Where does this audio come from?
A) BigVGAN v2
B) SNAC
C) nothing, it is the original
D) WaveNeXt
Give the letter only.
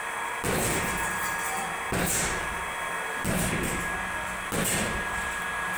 C